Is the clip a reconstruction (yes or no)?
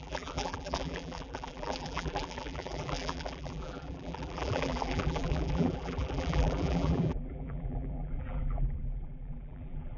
yes